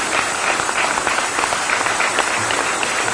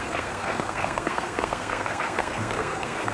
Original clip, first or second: first